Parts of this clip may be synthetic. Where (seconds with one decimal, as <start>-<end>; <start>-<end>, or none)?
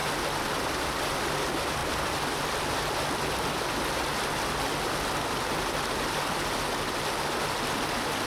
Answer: none